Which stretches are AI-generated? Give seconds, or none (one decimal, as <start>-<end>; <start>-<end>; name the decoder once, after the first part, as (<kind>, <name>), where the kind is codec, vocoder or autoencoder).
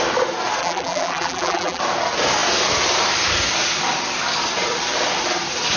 0.6-1.8 (vocoder, BigVGAN v2)